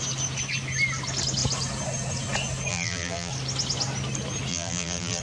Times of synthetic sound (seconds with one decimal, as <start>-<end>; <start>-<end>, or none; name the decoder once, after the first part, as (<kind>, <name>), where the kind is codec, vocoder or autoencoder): 2.7-3.3 (vocoder, BigVGAN v2); 4.5-5.2

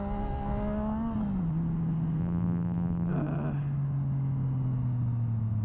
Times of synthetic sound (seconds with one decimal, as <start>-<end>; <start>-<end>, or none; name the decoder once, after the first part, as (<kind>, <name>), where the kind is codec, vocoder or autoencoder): 2.2-3.1 (vocoder, BigVGAN v2)

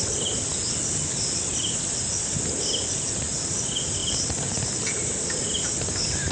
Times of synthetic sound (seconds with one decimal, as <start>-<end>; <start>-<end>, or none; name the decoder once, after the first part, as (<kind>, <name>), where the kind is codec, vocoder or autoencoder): 4.0-4.7 (vocoder, BigVGAN v2)

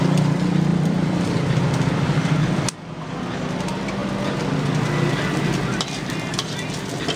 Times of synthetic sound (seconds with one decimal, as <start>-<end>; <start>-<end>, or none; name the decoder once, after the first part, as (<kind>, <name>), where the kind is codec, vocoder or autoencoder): 0.7-3.1 (vocoder, BigVGAN v2)

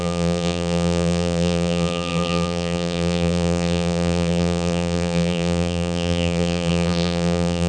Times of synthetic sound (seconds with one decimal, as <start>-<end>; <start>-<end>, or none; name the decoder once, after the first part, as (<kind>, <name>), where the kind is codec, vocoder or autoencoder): 0.0-7.7 (vocoder, BigVGAN v2)

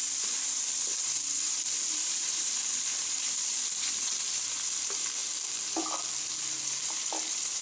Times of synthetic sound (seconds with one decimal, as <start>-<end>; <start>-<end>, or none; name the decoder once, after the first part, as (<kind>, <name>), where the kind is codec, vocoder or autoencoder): 0.0-5.2 (vocoder, BigVGAN v2); 6.4-7.6

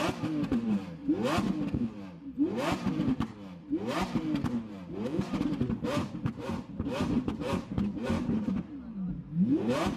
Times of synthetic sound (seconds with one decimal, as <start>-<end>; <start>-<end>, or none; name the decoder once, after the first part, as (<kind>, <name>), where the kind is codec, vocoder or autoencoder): 0.0-1.0 (vocoder, BigVGAN v2); 1.7-10.0